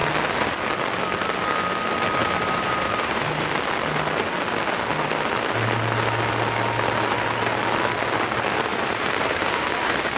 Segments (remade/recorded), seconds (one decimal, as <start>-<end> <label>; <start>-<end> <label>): 0.0-2.2 recorded; 2.2-3.6 remade; 3.6-8.7 recorded; 8.7-10.2 remade